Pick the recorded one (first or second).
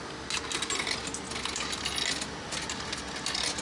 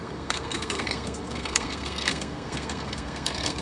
first